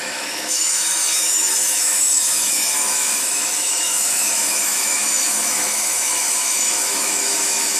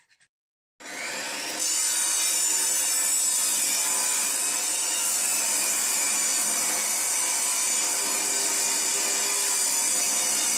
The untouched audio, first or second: second